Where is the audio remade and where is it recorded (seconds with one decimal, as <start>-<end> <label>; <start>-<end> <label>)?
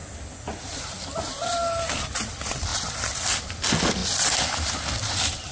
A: 0.0-5.5 recorded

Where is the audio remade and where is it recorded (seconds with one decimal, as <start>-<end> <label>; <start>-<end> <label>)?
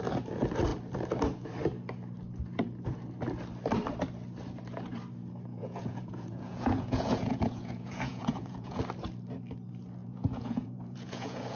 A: 0.0-5.5 recorded; 5.5-8.8 remade; 8.8-10.0 recorded; 10.0-11.6 remade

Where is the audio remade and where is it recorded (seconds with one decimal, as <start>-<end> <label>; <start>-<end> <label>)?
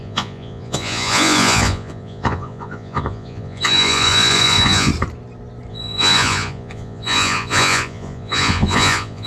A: 0.0-4.9 remade; 4.9-5.7 recorded; 5.7-9.3 remade